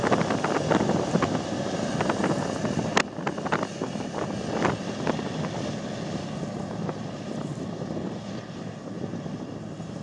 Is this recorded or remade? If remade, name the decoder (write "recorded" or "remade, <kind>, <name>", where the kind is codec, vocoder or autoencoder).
recorded